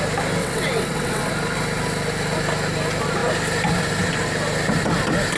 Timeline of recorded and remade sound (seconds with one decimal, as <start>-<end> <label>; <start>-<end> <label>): 0.0-0.4 recorded; 0.4-1.3 remade; 1.3-5.4 recorded